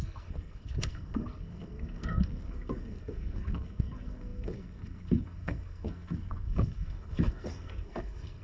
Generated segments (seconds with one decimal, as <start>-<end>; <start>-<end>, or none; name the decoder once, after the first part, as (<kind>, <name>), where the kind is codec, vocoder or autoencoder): 0.0-8.4 (codec, SNAC)